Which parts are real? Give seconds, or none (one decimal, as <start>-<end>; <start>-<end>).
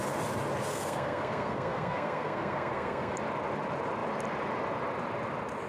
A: 0.0-0.7; 3.1-5.7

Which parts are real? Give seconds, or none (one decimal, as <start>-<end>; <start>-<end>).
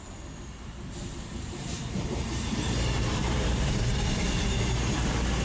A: 0.0-1.0; 4.2-5.4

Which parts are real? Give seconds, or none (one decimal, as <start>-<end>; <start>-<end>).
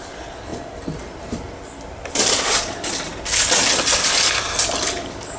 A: 0.0-5.4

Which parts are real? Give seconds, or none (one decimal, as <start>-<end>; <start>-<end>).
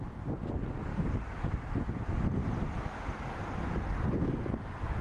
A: 0.0-0.9; 1.5-5.0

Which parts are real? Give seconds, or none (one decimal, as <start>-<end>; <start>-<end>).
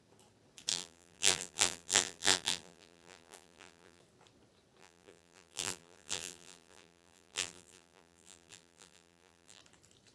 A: 0.0-0.7; 4.0-4.8; 9.6-10.1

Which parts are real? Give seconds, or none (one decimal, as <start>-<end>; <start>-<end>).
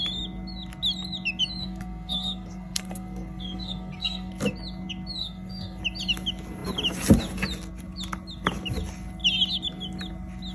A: 0.0-1.6; 4.3-5.2; 5.8-10.5